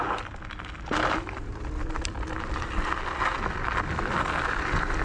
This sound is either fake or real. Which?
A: real